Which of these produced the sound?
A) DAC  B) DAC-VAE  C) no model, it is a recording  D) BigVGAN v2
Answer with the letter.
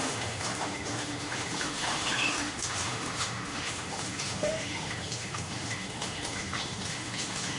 B